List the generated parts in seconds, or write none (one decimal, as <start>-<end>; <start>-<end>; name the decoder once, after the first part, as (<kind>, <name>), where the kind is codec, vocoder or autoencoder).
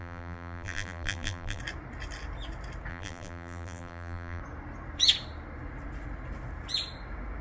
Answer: 0.0-1.6 (vocoder, BigVGAN v2); 2.9-4.4